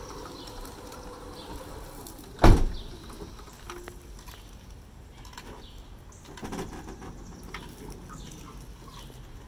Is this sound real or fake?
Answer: real